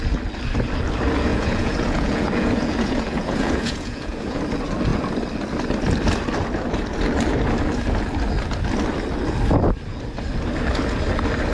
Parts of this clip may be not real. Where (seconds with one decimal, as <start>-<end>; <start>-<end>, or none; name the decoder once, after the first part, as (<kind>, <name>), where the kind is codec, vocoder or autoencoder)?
1.3-4.4 (vocoder, Vocos)